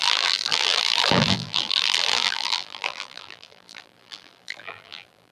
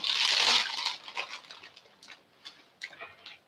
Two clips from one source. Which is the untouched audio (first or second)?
second